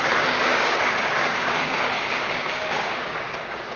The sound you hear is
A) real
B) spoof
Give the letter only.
B